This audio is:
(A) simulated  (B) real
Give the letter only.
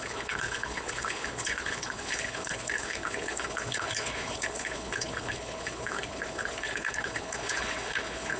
A